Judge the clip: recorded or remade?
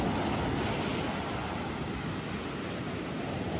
recorded